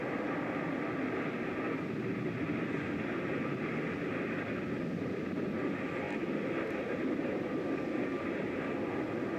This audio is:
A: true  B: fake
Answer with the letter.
A